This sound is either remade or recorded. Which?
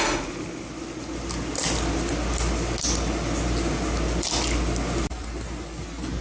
recorded